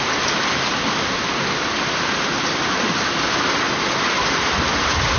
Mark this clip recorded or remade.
recorded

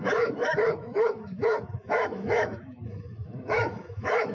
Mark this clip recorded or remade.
remade